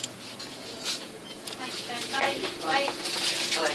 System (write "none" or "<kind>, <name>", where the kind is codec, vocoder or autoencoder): vocoder, Vocos